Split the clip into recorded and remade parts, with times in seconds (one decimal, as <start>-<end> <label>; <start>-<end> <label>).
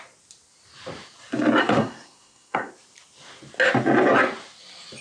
0.0-1.6 recorded; 1.6-2.7 remade; 2.7-5.0 recorded